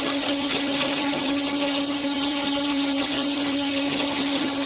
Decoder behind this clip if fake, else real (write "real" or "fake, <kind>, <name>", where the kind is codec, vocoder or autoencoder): fake, vocoder, HiFi-GAN